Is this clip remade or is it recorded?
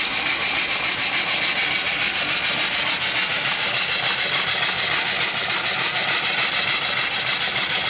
recorded